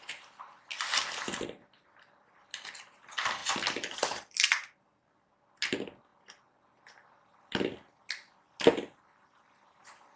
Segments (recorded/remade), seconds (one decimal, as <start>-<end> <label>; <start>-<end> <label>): 0.0-10.2 recorded

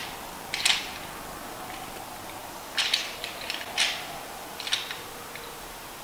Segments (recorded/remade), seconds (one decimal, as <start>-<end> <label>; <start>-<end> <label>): 0.0-2.4 recorded; 2.4-3.2 remade; 3.2-6.0 recorded

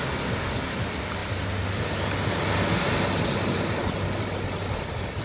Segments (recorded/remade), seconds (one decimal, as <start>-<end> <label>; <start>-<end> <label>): 0.0-5.2 recorded

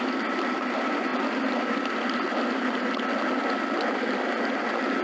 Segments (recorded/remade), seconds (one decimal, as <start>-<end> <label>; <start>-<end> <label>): 0.0-5.0 recorded